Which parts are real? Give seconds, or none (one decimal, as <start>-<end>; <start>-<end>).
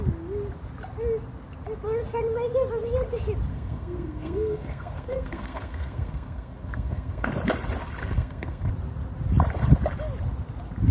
0.0-3.5; 7.3-8.0; 8.7-10.9